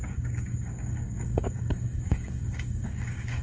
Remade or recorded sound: remade